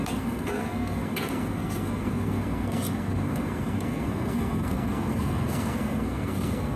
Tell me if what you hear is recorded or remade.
remade